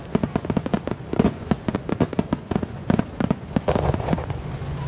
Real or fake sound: fake